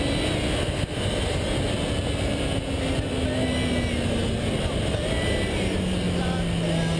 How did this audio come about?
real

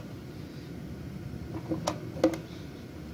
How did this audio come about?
real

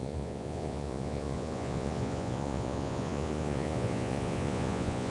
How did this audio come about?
fake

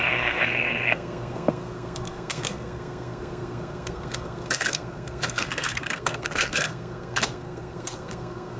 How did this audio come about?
fake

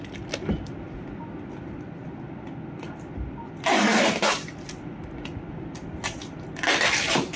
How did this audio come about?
real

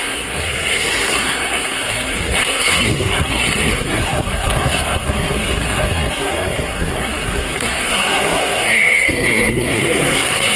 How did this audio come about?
fake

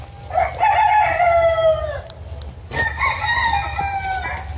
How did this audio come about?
real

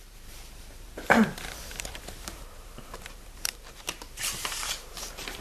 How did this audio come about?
fake